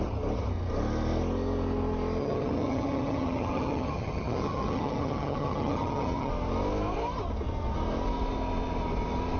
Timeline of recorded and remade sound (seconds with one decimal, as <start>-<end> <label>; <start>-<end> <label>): 0.0-2.2 recorded; 2.2-6.3 remade; 6.3-9.4 recorded